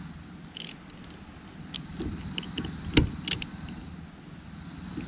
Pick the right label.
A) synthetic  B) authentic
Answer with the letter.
B